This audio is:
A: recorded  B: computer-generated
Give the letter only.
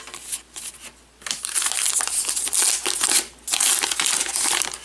A